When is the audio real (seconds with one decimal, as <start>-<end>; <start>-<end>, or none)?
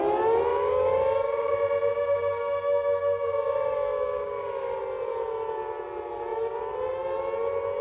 0.0-0.5; 1.5-1.9; 4.8-7.8